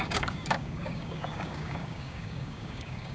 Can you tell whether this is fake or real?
fake